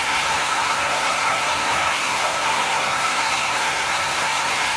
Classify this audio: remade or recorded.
remade